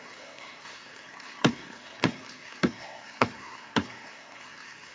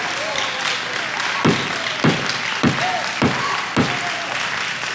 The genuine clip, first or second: second